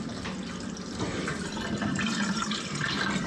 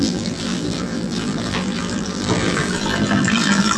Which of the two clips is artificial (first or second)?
second